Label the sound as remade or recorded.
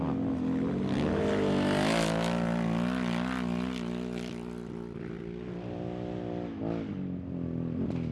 recorded